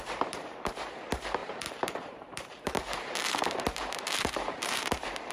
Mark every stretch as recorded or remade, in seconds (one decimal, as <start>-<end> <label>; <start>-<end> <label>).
0.0-5.3 remade